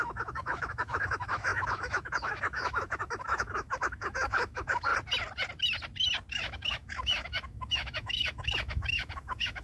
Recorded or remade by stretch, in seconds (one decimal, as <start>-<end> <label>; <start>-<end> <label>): 0.0-4.9 remade; 4.9-6.3 recorded; 6.3-9.6 remade